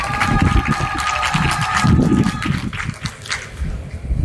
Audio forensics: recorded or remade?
recorded